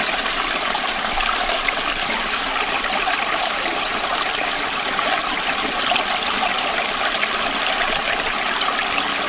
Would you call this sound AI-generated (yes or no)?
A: no